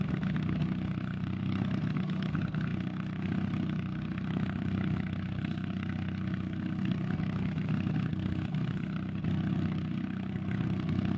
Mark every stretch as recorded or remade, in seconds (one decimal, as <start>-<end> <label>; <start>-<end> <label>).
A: 0.0-11.2 remade